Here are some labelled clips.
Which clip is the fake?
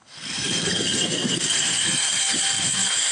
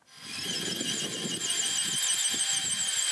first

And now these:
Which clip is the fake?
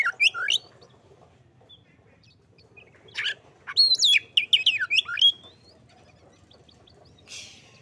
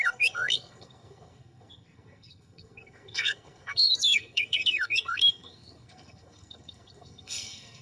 second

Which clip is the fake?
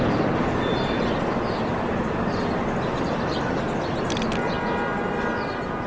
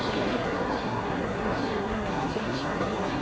second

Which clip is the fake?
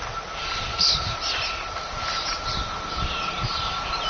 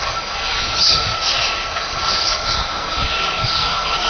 second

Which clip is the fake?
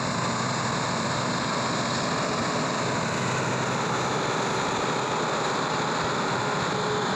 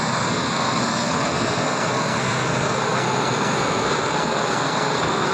second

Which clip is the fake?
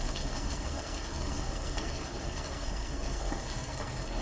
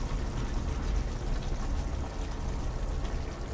first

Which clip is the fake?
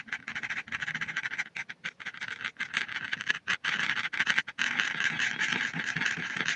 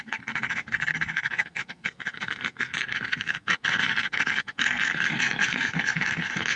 second